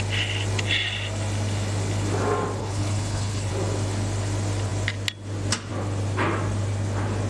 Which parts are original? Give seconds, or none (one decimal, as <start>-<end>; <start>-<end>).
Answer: 0.0-2.6; 3.5-7.3